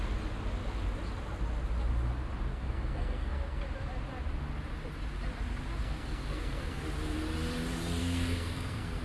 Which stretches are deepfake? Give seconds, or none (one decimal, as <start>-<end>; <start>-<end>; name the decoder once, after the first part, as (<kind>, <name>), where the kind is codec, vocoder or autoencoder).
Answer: 2.5-3.6 (codec, SNAC); 5.8-6.8; 8.0-9.0